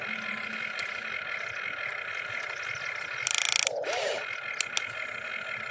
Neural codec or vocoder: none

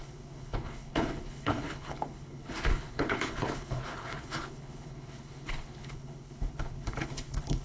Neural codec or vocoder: codec, HILCodec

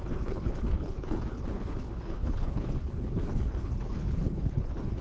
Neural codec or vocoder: codec, HILCodec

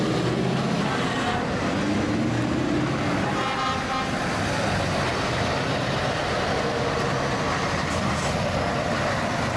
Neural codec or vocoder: none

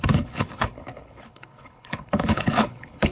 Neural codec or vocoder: codec, HILCodec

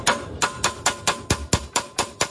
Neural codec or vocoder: none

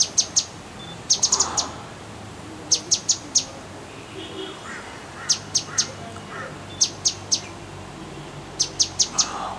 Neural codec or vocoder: none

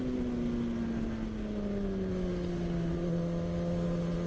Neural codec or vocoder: none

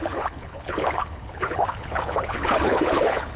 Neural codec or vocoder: codec, HILCodec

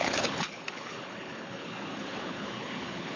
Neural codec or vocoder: codec, HILCodec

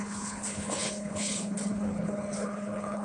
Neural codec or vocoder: codec, HILCodec